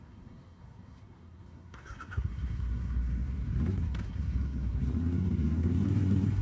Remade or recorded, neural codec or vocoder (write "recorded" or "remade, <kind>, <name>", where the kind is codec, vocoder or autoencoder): remade, codec, SNAC